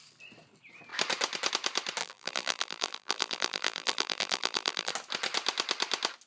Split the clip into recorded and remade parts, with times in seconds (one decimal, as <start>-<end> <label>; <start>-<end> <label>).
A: 0.0-2.0 recorded; 2.0-4.9 remade; 4.9-6.3 recorded